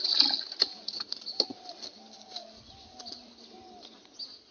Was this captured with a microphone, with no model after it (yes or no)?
yes